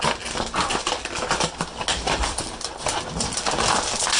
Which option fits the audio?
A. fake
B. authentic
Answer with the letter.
B